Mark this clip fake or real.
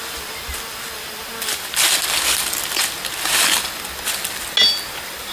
real